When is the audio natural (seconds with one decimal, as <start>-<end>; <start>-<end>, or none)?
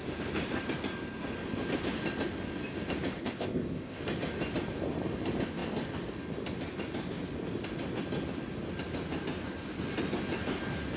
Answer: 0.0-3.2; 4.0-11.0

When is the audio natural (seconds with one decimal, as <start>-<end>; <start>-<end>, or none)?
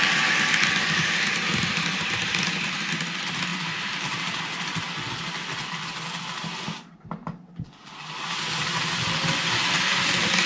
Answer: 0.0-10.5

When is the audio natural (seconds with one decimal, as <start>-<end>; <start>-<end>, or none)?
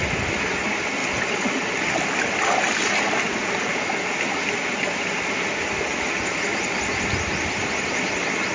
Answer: 0.0-8.5